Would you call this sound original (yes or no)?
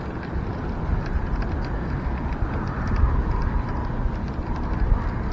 yes